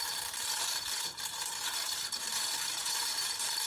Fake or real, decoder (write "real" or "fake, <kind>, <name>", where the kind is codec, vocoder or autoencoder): fake, vocoder, BigVGAN v2